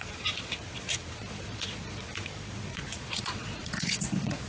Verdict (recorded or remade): remade